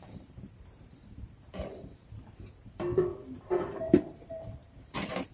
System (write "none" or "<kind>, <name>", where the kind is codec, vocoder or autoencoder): vocoder, BigVGAN v2